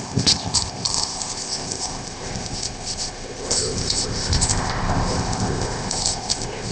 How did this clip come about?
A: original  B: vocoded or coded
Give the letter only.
B